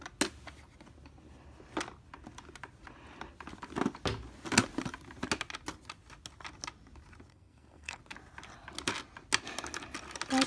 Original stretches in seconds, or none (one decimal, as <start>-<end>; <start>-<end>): 0.0-7.3; 8.0-10.5